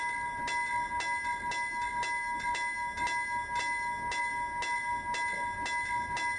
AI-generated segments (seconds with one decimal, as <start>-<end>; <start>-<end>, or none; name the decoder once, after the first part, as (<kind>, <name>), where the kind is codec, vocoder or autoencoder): none